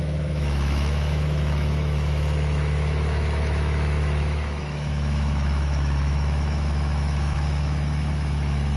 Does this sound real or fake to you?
fake